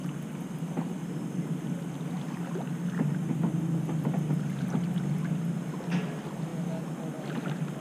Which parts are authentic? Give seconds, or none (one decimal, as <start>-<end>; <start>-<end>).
0.0-7.8